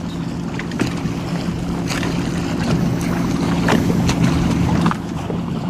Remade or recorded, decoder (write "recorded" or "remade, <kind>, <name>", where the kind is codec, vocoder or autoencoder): recorded